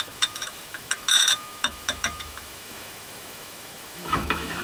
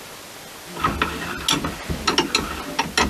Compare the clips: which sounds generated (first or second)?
first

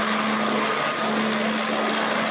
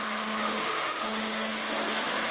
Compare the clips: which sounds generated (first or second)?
second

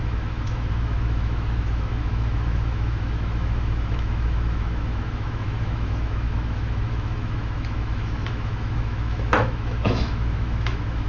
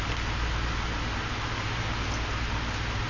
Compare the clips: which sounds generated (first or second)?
first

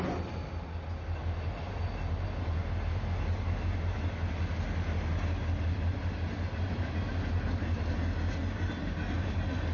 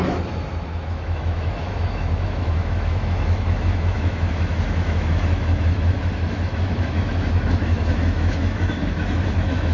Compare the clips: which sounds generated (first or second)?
second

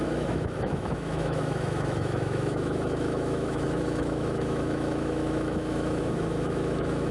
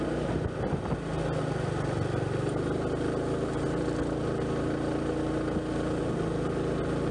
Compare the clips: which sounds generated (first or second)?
first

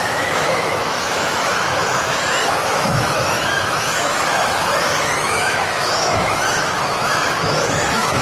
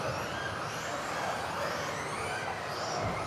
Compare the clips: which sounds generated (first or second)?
first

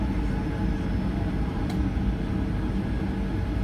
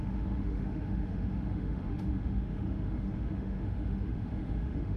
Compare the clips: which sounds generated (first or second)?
second